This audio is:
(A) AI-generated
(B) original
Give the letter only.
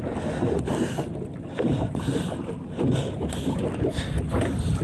B